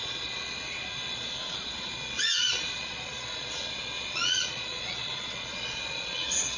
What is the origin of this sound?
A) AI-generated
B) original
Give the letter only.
A